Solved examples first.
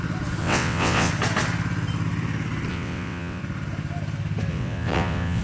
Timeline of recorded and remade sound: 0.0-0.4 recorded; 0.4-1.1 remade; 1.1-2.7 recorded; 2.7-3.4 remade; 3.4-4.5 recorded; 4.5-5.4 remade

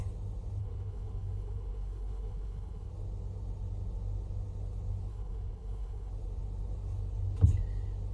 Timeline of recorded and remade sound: 0.0-0.6 recorded; 0.6-2.9 remade; 2.9-5.1 recorded; 5.1-6.1 remade; 6.1-8.1 recorded

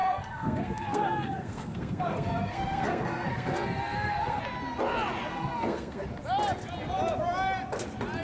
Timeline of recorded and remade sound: 0.0-4.4 remade; 4.4-5.3 recorded; 5.3-6.0 remade; 6.0-8.2 recorded

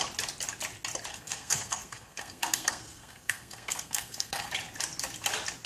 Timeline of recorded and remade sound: 0.0-1.1 recorded; 1.1-4.5 remade; 4.5-5.7 recorded